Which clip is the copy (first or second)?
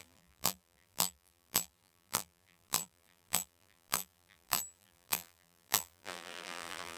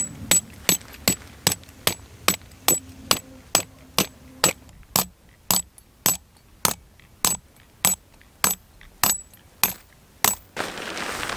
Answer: first